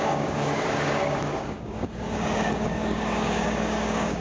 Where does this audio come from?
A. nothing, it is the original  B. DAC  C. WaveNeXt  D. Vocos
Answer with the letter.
B